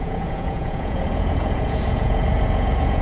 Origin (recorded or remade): remade